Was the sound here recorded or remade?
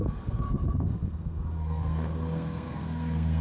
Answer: remade